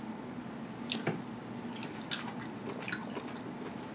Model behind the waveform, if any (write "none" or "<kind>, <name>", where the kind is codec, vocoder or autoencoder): none